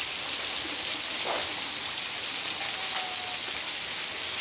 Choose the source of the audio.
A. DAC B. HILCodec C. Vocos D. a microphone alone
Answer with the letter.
D